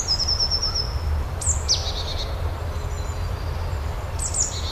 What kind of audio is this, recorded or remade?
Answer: recorded